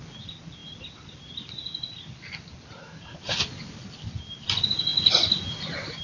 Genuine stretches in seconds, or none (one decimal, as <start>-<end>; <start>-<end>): 0.0-6.0